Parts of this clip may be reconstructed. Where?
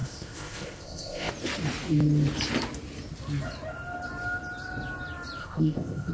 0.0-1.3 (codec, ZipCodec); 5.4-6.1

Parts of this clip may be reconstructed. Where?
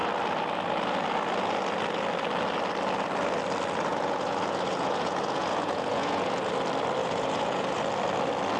3.9-6.5 (vocoder, Vocos); 7.0-7.8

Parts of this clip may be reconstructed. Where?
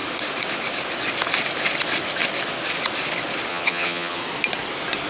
3.5-4.2 (vocoder, HiFi-GAN)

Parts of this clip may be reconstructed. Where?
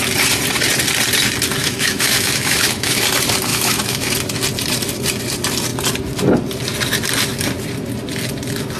1.6-3.0 (autoencoder, DAC-VAE); 3.5-4.1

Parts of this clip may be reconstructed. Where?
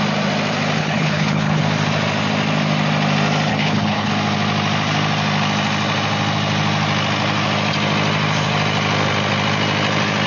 0.8-1.6 (codec, HILCodec); 3.5-4.1